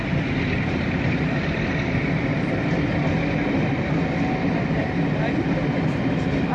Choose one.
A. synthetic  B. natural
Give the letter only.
A